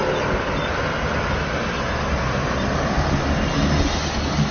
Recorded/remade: recorded